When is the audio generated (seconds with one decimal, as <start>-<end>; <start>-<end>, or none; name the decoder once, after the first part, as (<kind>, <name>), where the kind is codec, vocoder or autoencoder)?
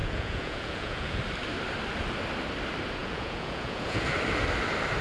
0.0-1.2 (vocoder, Vocos); 3.0-4.2